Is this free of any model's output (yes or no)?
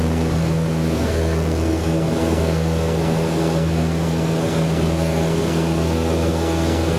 no